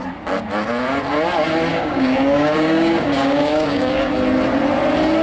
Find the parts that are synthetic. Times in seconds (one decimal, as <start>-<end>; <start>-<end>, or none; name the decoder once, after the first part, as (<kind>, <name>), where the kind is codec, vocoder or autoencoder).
1.7-4.1 (codec, DAC)